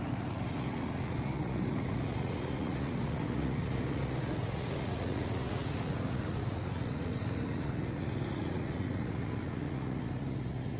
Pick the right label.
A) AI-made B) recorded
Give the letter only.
A